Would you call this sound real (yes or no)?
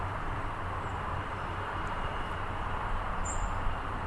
no